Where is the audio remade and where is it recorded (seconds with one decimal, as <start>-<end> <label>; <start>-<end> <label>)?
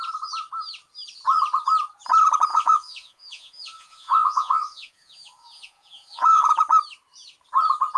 0.0-2.5 recorded; 2.5-6.5 remade; 6.5-8.0 recorded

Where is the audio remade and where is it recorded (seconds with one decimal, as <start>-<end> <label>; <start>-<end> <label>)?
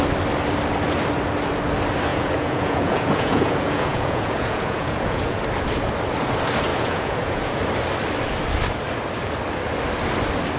0.0-2.1 recorded; 2.1-5.4 remade; 5.4-6.7 recorded; 6.7-7.6 remade; 7.6-10.6 recorded